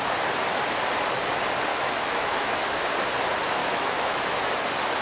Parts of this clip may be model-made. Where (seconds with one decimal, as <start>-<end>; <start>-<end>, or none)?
1.7-2.8; 3.6-4.5